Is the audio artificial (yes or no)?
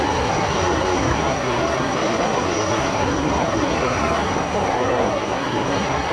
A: yes